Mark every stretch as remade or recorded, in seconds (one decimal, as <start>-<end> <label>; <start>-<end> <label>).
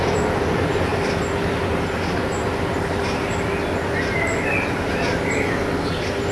0.0-6.3 recorded